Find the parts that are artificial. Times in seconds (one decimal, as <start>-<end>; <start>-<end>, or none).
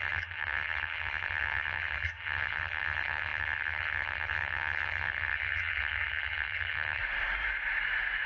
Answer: 0.0-7.0